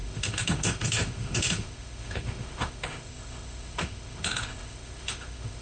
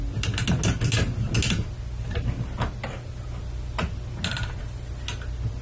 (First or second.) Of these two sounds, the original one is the second